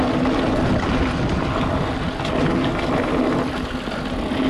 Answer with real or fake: real